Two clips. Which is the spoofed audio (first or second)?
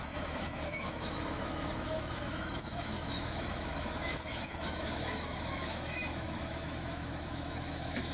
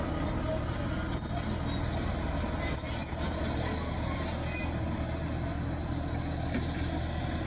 first